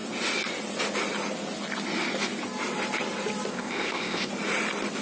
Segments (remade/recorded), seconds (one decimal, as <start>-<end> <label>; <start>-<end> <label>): 0.0-3.5 recorded; 3.5-4.3 remade; 4.3-5.0 recorded